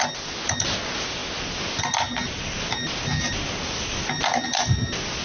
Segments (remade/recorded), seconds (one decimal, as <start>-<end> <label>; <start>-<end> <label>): 0.0-5.2 recorded